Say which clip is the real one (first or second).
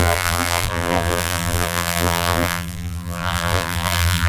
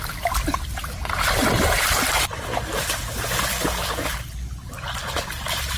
second